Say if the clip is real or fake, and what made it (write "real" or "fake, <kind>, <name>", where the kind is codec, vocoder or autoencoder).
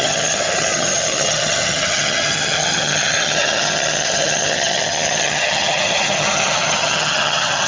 fake, vocoder, HiFi-GAN